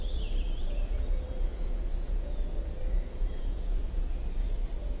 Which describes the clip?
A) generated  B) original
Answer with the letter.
A